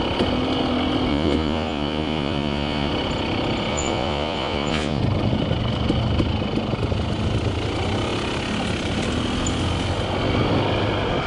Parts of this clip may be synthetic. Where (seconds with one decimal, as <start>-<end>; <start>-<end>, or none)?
1.1-2.9; 3.7-5.0